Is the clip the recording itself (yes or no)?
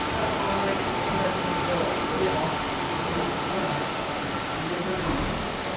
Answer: yes